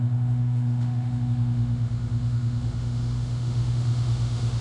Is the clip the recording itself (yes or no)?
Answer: no